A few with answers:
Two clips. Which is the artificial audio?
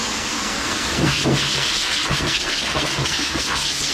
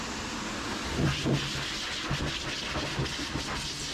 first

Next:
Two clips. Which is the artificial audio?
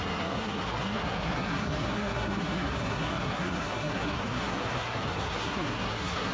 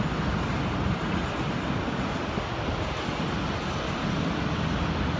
first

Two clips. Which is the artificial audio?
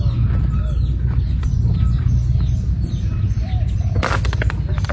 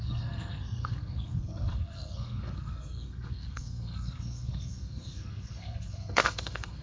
second